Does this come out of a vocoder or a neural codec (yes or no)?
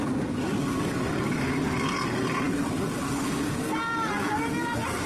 no